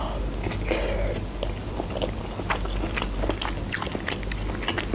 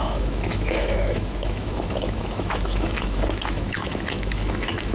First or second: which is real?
first